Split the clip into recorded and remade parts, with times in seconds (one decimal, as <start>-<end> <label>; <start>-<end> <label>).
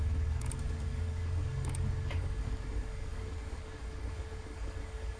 0.0-5.2 remade